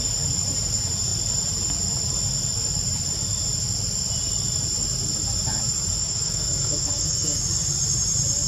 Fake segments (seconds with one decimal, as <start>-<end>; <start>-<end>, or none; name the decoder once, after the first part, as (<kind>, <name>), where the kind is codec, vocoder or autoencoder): 6.0-7.4 (autoencoder, DAC-VAE)